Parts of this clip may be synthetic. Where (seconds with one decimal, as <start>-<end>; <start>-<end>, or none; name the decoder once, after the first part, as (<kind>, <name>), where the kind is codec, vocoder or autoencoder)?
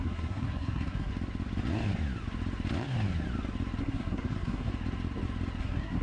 0.0-1.1 (codec, SNAC); 3.8-4.7; 5.6-6.0